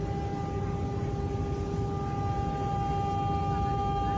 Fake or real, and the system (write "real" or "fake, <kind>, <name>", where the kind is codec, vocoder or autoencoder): real